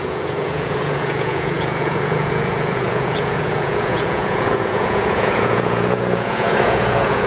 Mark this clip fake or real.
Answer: fake